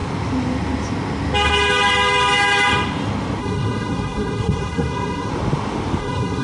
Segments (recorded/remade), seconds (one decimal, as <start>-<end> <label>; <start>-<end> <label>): 0.0-3.4 recorded; 3.4-5.3 remade; 5.3-6.0 recorded; 6.0-6.4 remade